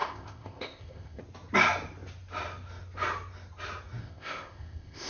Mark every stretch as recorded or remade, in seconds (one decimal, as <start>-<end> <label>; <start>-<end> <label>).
0.0-1.2 remade; 1.2-4.0 recorded; 4.0-5.1 remade